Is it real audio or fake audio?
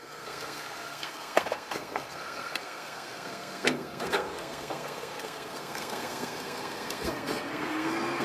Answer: fake